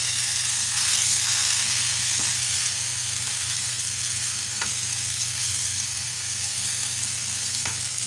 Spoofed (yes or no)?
yes